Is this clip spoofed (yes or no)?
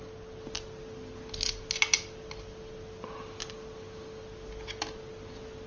no